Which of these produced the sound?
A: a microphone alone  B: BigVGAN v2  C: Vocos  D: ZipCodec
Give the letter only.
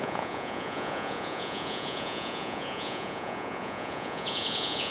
C